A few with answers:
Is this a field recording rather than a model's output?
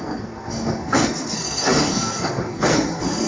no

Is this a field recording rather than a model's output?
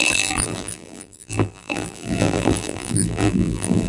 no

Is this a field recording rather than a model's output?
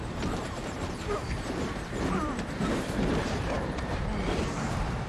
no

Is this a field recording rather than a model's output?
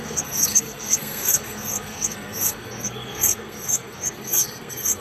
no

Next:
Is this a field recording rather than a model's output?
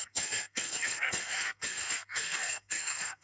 no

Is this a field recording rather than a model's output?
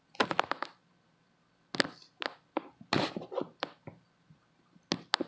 yes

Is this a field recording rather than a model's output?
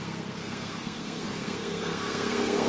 no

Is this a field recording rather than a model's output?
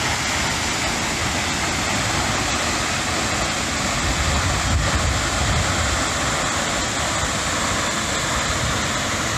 yes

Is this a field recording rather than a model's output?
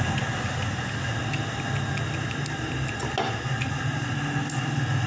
yes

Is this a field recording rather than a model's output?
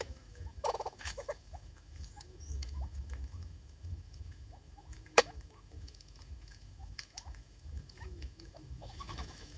no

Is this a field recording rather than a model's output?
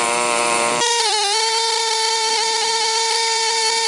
no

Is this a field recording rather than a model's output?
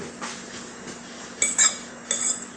yes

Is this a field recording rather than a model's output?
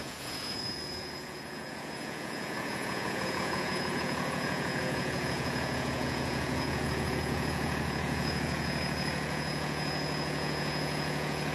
no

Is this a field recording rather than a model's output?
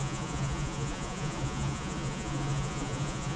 no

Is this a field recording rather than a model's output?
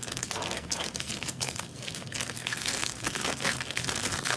no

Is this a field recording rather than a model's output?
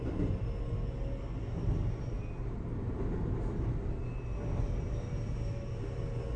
yes